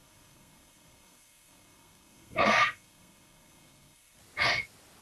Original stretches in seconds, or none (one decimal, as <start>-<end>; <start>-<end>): 4.2-5.0